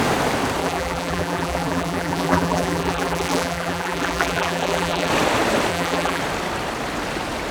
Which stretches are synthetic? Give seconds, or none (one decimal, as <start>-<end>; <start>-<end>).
0.6-5.1; 5.7-6.2